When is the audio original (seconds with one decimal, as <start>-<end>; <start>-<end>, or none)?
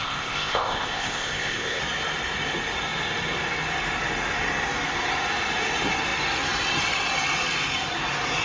1.8-8.4